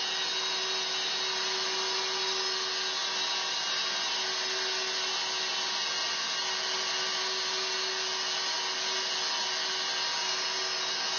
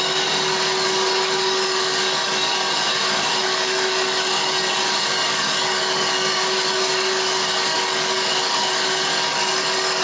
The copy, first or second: second